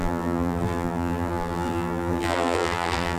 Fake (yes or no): yes